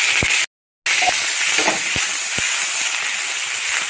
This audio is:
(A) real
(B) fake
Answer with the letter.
A